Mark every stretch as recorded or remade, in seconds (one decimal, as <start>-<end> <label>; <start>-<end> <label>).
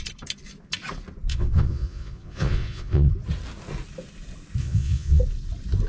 0.0-1.3 recorded; 1.3-3.1 remade; 3.1-4.6 recorded; 4.6-5.2 remade; 5.2-5.9 recorded